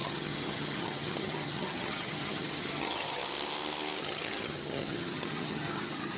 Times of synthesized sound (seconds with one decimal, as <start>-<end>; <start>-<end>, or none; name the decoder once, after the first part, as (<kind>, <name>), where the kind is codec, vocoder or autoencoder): 0.0-3.2 (vocoder, HiFi-GAN); 4.0-6.2